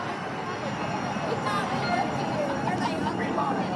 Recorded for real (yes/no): yes